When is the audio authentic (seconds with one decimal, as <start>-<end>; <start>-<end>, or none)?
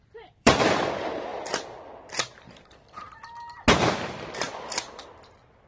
1.3-4.7